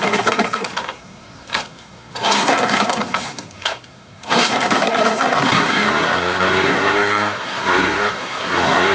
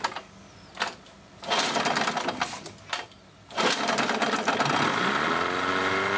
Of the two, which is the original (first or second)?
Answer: second